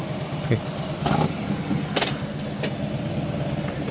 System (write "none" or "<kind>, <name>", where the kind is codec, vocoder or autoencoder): none